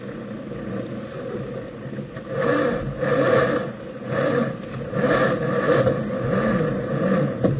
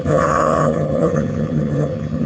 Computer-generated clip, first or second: second